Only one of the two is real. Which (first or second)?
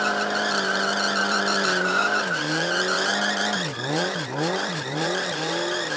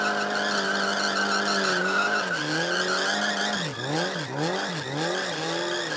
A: second